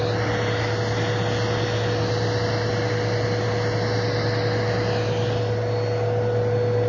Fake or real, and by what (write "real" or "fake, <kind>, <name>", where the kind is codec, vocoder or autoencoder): real